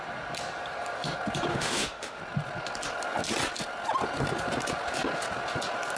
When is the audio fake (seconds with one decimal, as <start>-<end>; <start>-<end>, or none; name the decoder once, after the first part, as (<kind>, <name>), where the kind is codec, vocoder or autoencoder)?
1.5-2.2 (autoencoder, DAC-VAE)